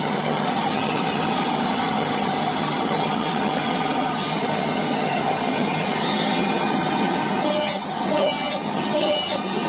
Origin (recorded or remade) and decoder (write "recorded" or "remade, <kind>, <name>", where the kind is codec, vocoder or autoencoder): remade, vocoder, HiFi-GAN